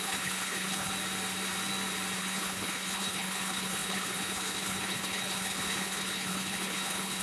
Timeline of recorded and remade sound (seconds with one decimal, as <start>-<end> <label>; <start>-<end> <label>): 0.0-0.9 remade; 0.9-2.2 recorded; 2.2-7.2 remade